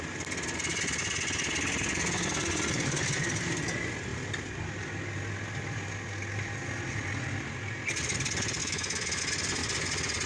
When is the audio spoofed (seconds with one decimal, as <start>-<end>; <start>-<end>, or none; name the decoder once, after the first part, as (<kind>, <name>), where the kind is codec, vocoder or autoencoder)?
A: 8.6-9.2 (autoencoder, DAC-VAE)